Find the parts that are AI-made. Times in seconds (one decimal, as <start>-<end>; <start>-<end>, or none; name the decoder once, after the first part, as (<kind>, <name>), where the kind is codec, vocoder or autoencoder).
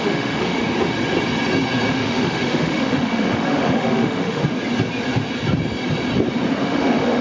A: 0.0-0.6 (autoencoder, DAC-VAE); 1.9-4.4; 6.6-7.2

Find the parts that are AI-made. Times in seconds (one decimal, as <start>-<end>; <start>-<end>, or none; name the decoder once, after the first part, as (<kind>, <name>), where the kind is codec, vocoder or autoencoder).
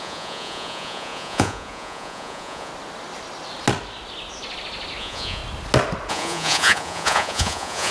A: 0.0-2.7 (vocoder, Vocos); 5.0-5.4; 6.1-7.9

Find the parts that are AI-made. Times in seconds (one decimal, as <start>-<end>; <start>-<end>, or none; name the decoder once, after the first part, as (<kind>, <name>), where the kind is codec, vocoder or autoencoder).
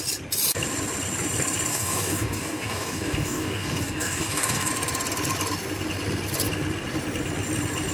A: 1.7-4.7 (codec, DAC)